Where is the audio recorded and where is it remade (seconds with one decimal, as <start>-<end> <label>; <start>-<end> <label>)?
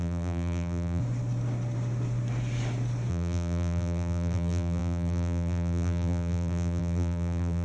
0.0-1.0 remade; 1.0-3.1 recorded; 3.1-7.6 remade